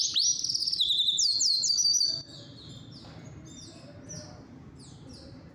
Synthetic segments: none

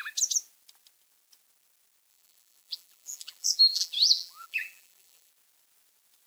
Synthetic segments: 2.1-5.3 (vocoder, BigVGAN v2)

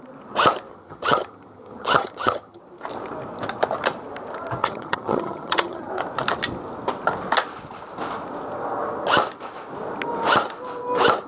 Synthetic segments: 0.7-2.6 (vocoder, HiFi-GAN); 4.6-5.9

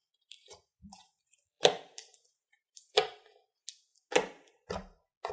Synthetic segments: 0.0-3.2 (vocoder, BigVGAN v2)

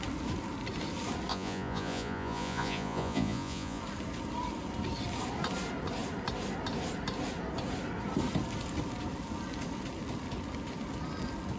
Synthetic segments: 1.3-3.8 (vocoder, Vocos)

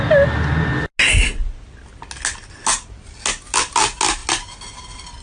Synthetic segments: none